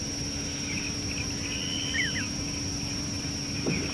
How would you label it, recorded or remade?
recorded